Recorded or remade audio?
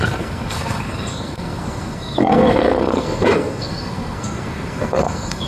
remade